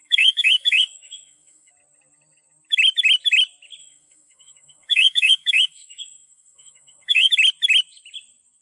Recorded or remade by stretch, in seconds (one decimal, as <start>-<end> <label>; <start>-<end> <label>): 0.0-1.7 remade; 1.7-3.8 recorded; 3.8-7.3 remade; 7.3-8.6 recorded